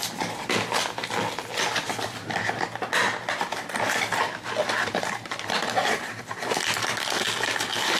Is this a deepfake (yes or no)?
no